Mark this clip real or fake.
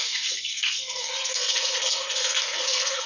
fake